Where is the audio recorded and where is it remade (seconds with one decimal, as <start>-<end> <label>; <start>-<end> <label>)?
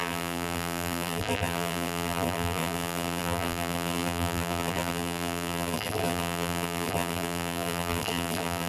0.0-8.7 remade